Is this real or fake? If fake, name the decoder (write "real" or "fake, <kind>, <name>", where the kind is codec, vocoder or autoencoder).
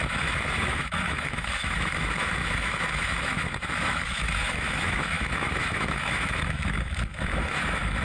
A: fake, autoencoder, DAC-VAE